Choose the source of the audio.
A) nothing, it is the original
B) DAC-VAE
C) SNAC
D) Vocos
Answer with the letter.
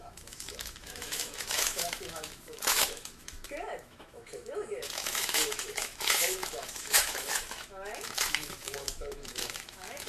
B